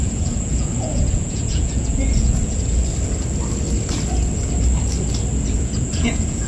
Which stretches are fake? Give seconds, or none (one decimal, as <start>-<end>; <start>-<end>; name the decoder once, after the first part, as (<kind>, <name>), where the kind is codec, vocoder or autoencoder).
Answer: 0.0-2.8 (vocoder, Vocos); 5.4-6.5

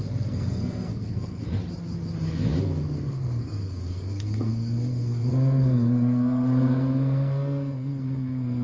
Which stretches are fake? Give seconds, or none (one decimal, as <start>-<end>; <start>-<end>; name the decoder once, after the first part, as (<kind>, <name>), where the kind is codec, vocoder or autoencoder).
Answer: 0.0-1.6 (codec, SNAC); 2.6-8.6

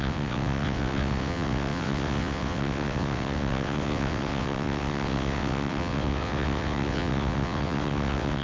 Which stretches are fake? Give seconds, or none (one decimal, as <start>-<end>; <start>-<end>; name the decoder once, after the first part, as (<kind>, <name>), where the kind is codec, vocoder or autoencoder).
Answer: 0.0-8.4 (vocoder, WaveNeXt)